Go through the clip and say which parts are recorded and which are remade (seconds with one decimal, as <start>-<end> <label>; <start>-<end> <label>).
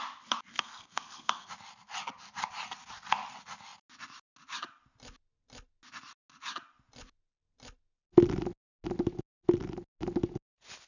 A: 0.0-0.5 recorded; 0.5-1.5 remade; 1.5-10.9 recorded